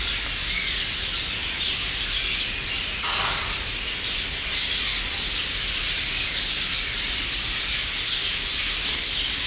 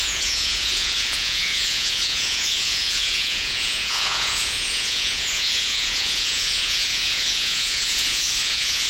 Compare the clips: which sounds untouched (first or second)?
first